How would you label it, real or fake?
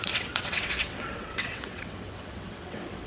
fake